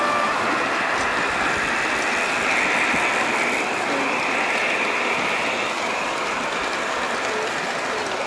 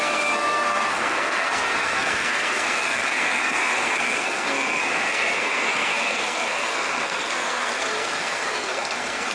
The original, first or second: first